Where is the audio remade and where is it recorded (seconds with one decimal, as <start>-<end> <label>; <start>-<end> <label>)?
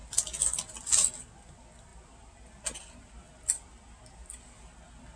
0.0-5.2 recorded